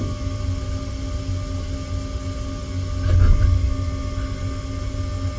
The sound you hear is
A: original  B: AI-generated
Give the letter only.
A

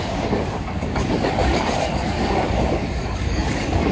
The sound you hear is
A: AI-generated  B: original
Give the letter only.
A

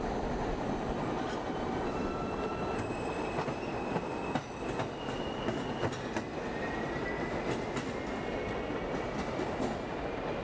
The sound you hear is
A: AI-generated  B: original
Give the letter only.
B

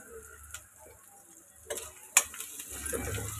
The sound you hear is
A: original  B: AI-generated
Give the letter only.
A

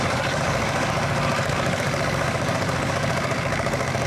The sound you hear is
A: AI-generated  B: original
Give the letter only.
A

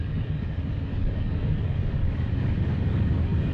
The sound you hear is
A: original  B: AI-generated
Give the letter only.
B